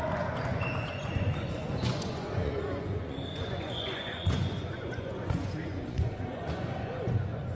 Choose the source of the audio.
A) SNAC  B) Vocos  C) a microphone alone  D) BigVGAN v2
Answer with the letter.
B